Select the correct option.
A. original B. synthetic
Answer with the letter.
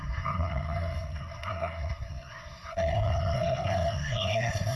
B